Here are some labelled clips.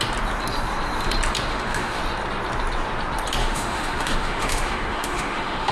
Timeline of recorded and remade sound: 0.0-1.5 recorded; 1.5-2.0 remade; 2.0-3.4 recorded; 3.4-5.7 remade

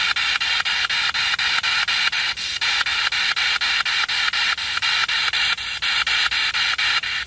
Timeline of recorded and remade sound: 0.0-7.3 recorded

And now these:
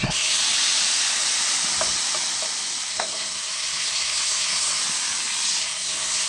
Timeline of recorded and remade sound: 0.0-0.4 remade; 0.4-2.9 recorded; 2.9-4.8 remade; 4.8-5.6 recorded; 5.6-6.3 remade

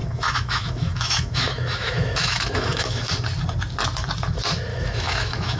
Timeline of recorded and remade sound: 0.0-3.1 remade; 3.1-4.7 recorded; 4.7-5.6 remade